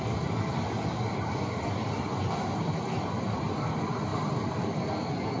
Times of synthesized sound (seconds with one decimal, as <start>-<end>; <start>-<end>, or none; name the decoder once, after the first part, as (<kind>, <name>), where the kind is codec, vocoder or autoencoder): 4.1-4.9 (vocoder, BigVGAN v2)

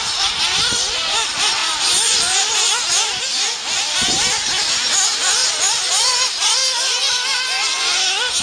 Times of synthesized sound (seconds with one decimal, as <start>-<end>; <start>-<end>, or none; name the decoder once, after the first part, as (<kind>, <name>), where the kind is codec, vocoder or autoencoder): none

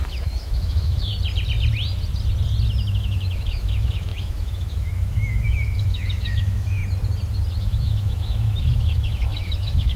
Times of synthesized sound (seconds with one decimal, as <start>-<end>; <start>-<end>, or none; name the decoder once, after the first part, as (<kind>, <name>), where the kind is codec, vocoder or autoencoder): 0.0-1.1 (autoencoder, DAC-VAE); 2.9-6.8; 7.6-10.0

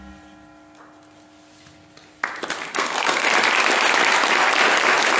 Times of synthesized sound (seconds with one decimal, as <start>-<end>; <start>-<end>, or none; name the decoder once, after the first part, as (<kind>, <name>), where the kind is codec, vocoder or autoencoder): 2.7-3.3 (codec, SNAC)

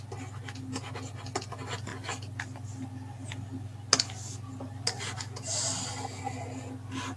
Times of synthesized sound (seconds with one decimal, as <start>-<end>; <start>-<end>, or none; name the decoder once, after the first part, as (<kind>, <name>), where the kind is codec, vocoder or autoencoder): none

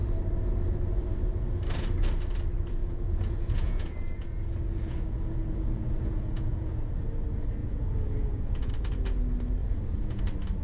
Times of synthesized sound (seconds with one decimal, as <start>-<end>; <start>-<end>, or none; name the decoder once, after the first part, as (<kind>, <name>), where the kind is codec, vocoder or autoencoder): 2.8-6.9 (vocoder, Vocos); 7.6-8.7; 9.6-10.2